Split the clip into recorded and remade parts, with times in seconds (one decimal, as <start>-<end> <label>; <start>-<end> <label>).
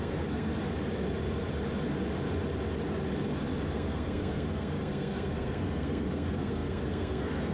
0.0-0.5 remade; 0.5-3.7 recorded; 3.7-7.5 remade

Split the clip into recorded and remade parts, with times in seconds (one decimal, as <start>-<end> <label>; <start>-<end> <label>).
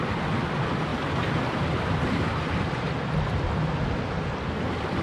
0.0-0.9 recorded; 0.9-2.3 remade; 2.3-5.0 recorded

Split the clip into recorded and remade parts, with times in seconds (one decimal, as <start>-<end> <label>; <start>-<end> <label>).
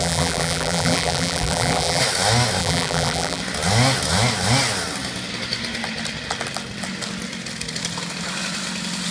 0.0-2.0 remade; 2.0-2.6 recorded; 2.6-3.4 remade; 3.4-9.1 recorded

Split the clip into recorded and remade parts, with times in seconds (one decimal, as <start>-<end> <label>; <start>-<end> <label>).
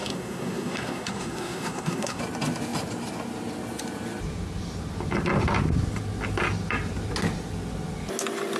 0.0-2.2 remade; 2.2-8.6 recorded